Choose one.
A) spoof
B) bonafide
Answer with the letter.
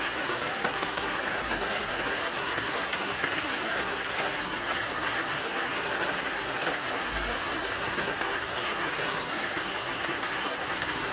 A